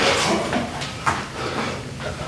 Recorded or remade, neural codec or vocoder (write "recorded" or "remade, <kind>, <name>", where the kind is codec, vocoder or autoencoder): recorded